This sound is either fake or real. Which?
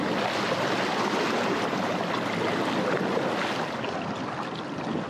real